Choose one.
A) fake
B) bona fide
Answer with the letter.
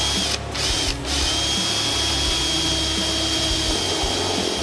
B